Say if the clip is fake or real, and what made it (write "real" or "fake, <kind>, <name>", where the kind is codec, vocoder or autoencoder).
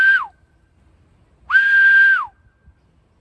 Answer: real